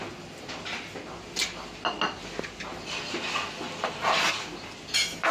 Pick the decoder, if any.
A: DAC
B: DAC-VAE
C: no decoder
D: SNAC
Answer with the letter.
C